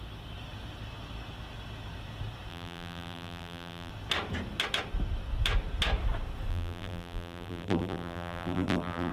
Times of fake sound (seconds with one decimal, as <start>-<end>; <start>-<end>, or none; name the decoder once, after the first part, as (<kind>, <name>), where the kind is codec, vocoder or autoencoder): 2.5-3.9 (vocoder, BigVGAN v2); 6.5-9.1